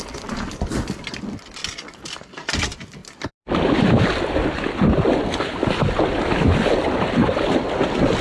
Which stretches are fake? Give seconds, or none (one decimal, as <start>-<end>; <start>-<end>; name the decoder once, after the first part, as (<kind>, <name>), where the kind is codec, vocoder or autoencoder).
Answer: none